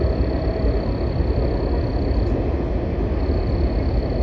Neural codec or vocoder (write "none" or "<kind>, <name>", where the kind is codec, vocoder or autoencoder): none